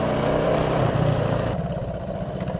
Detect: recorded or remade remade